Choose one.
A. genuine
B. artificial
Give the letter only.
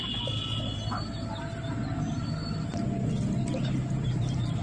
A